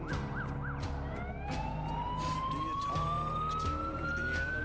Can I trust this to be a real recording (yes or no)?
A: yes